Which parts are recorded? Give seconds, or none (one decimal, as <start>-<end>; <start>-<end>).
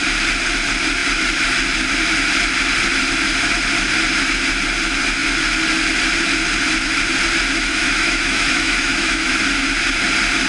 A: 0.0-7.7; 9.3-10.5